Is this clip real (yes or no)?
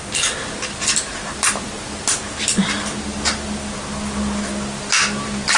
yes